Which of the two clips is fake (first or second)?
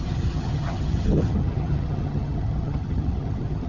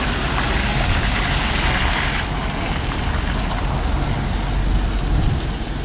first